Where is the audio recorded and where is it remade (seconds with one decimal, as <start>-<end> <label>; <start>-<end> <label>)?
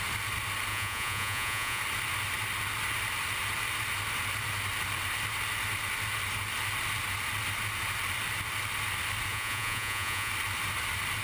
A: 0.0-0.7 recorded; 0.7-1.8 remade; 1.8-9.3 recorded; 9.3-10.3 remade; 10.3-11.2 recorded